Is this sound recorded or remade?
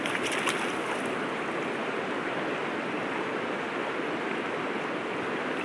recorded